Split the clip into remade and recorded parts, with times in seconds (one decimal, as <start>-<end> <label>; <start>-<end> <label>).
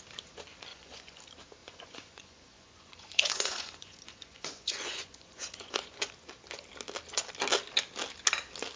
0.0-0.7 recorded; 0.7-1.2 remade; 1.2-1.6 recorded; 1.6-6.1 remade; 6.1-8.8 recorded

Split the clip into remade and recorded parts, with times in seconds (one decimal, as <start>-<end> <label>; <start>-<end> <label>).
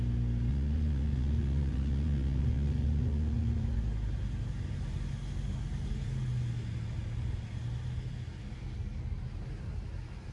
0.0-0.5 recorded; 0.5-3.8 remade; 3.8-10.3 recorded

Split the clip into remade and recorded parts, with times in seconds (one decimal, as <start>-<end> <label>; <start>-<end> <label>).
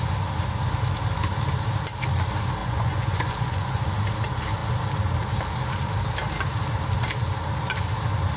0.0-2.6 recorded; 2.6-3.8 remade; 3.8-8.4 recorded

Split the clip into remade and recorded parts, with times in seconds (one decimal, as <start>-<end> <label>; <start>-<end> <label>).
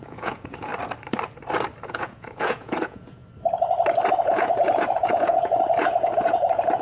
0.0-0.7 remade; 0.7-1.9 recorded; 1.9-3.2 remade; 3.2-4.2 recorded; 4.2-6.8 remade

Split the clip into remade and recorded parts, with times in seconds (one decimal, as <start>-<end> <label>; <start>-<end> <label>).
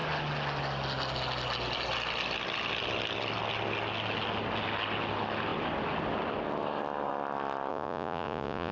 0.0-7.7 recorded; 7.7-8.7 remade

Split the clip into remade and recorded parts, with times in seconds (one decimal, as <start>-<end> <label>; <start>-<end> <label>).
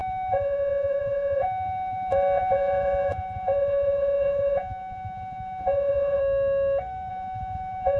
0.0-6.2 remade; 6.2-7.1 recorded; 7.1-8.0 remade